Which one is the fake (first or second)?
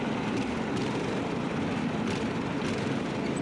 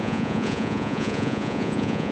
second